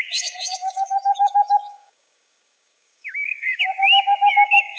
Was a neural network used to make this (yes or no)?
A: yes